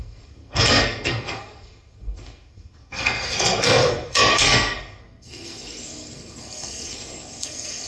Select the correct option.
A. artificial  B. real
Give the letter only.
A